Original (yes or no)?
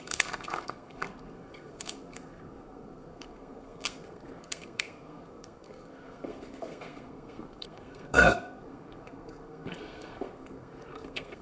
no